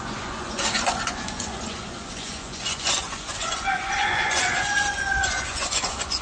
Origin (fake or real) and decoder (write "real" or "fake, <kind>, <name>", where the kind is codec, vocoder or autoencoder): fake, vocoder, Vocos